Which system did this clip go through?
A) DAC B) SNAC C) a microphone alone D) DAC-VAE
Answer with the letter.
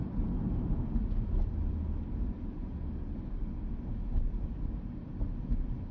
C